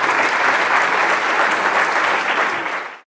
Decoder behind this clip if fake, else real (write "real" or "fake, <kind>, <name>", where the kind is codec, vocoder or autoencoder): real